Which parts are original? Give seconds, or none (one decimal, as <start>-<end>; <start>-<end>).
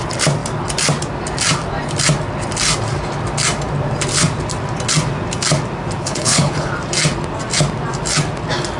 0.0-6.0; 6.7-8.8